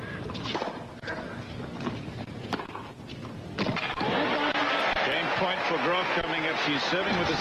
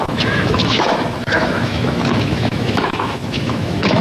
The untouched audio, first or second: first